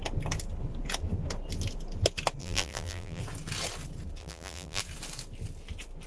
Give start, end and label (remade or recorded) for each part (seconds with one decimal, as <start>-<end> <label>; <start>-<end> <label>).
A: 0.0-2.4 recorded; 2.4-3.2 remade; 3.2-4.2 recorded; 4.2-4.8 remade; 4.8-6.1 recorded